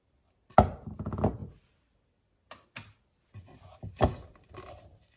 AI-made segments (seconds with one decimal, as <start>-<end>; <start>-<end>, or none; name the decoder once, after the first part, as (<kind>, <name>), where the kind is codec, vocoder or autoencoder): none